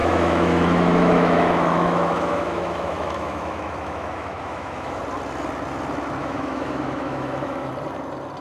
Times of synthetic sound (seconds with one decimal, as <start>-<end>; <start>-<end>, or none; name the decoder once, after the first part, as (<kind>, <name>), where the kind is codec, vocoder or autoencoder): 0.0-5.0 (autoencoder, DAC-VAE); 6.2-7.7